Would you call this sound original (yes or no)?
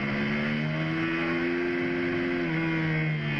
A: yes